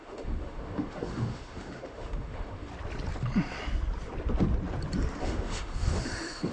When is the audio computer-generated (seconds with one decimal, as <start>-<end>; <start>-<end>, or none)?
0.0-2.7; 5.2-6.5